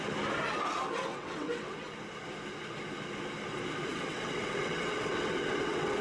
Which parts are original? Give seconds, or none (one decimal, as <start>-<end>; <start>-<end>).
0.0-1.1; 1.7-3.9